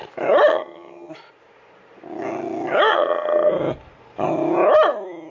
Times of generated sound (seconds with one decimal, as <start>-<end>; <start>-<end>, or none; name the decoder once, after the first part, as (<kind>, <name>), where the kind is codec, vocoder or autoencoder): 0.5-1.1 (vocoder, HiFi-GAN); 2.9-3.5